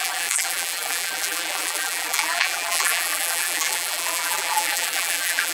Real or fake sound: fake